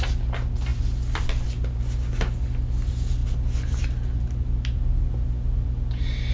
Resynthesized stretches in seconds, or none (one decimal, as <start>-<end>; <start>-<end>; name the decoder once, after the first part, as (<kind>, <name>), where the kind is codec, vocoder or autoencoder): none